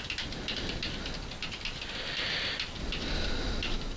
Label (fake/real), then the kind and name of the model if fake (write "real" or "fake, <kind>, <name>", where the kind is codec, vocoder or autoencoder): real